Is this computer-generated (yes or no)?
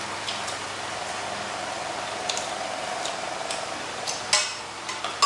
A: no